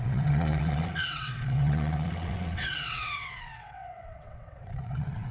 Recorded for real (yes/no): no